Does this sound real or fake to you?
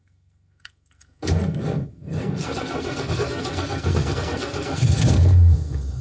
fake